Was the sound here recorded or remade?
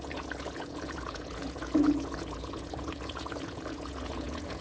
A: remade